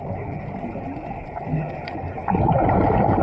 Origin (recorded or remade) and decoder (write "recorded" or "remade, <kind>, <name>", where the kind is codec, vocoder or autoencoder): recorded